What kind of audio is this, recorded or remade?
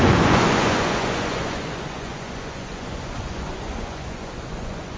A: remade